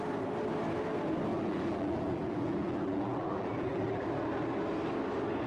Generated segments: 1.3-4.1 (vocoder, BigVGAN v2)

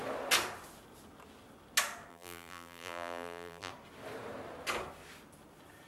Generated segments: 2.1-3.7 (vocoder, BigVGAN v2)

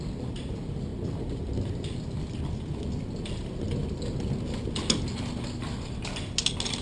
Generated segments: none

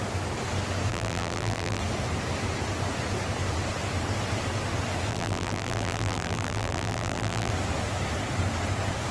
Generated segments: 0.9-1.8 (vocoder, BigVGAN v2); 5.1-7.5

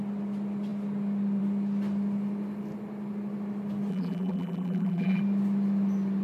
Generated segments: 3.9-5.2 (vocoder, BigVGAN v2)

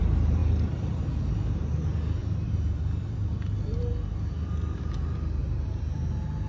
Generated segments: 2.2-3.8 (vocoder, BigVGAN v2); 5.4-6.1

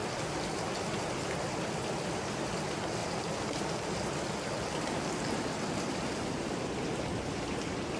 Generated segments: none

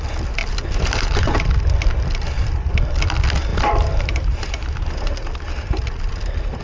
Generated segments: 0.4-1.4 (vocoder, BigVGAN v2); 3.5-5.3